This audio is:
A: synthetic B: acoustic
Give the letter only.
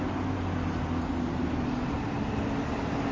B